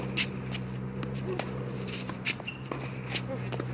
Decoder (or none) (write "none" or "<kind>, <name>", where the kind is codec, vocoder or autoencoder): none